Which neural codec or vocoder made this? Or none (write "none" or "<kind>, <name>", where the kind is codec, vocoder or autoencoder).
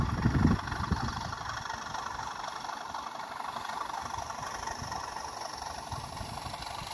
none